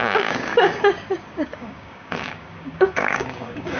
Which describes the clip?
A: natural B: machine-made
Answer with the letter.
B